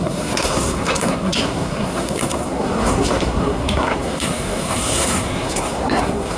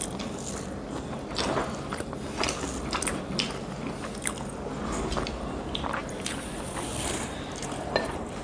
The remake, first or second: first